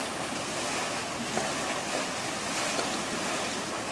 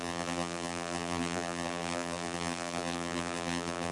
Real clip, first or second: first